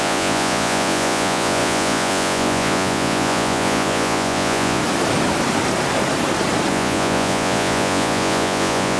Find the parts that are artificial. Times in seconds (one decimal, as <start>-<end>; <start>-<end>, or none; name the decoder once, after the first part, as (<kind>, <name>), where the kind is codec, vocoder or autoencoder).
0.0-4.8 (vocoder, Vocos); 6.7-9.0